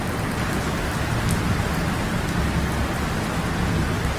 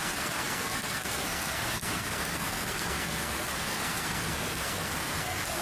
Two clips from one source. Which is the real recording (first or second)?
first